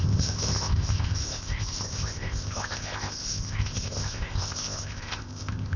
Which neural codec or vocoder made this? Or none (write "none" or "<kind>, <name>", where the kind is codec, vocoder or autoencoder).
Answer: codec, ZipCodec